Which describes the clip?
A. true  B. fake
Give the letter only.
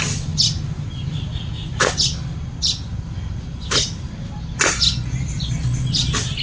A